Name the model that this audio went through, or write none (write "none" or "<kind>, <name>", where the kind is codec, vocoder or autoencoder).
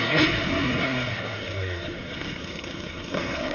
codec, SNAC